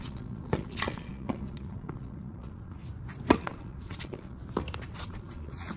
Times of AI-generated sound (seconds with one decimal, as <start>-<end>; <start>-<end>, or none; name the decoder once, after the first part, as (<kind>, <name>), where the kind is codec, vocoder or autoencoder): 0.0-2.8 (vocoder, Vocos); 3.4-4.4; 4.9-5.8